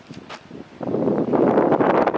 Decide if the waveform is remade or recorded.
remade